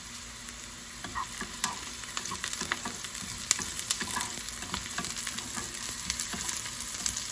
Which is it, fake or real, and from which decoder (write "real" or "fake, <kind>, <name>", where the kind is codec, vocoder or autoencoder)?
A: real